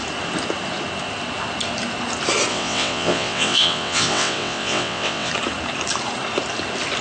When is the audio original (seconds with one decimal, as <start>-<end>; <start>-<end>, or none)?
0.0-2.5; 5.3-7.0